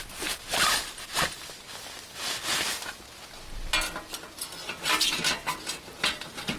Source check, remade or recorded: recorded